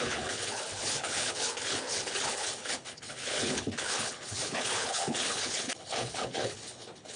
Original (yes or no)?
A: no